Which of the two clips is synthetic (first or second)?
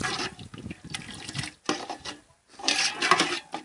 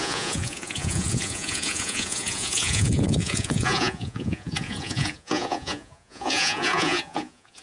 second